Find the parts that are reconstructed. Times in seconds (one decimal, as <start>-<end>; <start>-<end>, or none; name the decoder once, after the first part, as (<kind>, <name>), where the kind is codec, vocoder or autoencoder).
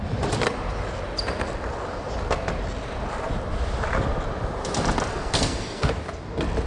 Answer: 5.1-5.9 (codec, SNAC)